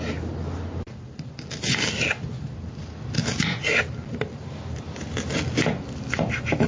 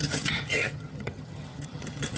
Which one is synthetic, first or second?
second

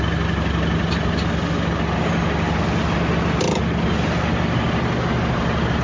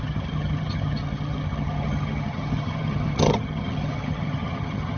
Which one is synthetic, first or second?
second